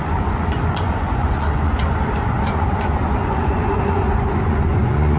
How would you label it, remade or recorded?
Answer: remade